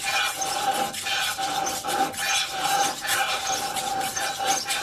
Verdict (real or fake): real